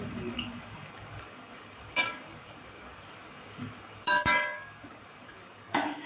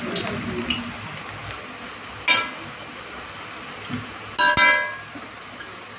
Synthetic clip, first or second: first